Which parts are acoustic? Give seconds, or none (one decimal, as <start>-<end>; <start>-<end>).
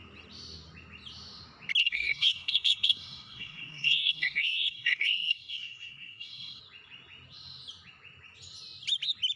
0.0-1.8; 6.6-9.4